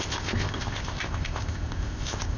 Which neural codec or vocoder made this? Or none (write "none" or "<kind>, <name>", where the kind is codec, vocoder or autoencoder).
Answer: codec, ZipCodec